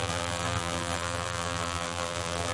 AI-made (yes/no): yes